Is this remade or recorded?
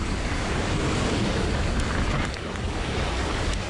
remade